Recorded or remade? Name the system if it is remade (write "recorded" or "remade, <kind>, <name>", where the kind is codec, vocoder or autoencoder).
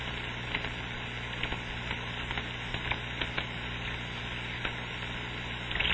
recorded